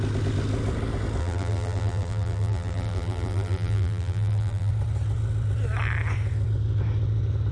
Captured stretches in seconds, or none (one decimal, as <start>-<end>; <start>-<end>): 0.0-1.2; 4.7-7.5